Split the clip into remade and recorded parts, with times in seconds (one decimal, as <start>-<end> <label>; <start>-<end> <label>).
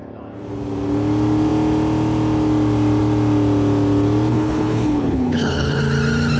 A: 0.0-4.3 recorded; 4.3-5.8 remade; 5.8-6.4 recorded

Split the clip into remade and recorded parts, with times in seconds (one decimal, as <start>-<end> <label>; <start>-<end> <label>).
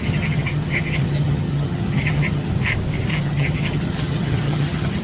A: 0.0-2.5 remade; 2.5-3.1 recorded; 3.1-5.0 remade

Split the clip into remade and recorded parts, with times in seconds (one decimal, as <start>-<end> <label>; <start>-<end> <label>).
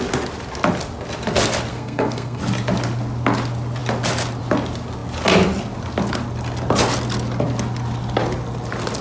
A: 0.0-1.7 recorded; 1.7-2.4 remade; 2.4-9.0 recorded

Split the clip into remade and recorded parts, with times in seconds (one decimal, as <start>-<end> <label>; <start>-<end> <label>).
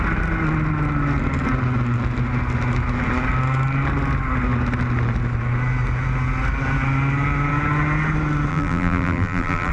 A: 0.0-8.5 recorded; 8.5-9.7 remade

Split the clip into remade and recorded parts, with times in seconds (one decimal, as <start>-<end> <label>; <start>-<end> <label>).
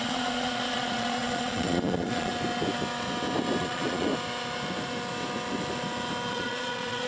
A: 0.0-2.3 remade; 2.3-3.6 recorded; 3.6-4.1 remade; 4.1-6.3 recorded; 6.3-7.1 remade